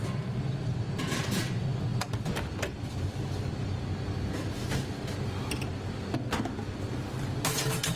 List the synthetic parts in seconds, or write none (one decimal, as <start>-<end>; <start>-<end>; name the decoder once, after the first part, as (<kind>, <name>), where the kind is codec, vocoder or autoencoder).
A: none